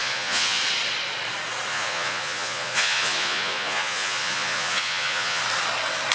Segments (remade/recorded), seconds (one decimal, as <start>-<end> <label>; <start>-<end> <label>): 0.0-0.6 remade; 0.6-1.7 recorded; 1.7-5.4 remade; 5.4-6.1 recorded